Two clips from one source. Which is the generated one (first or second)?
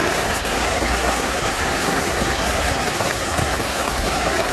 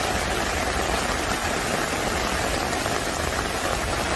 first